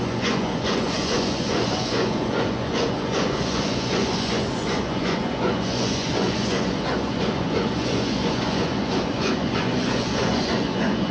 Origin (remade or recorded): remade